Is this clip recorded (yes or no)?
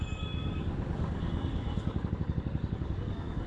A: no